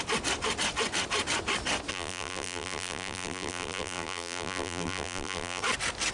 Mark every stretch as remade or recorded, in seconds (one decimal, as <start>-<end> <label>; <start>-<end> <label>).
0.0-1.9 recorded; 1.9-5.6 remade; 5.6-6.1 recorded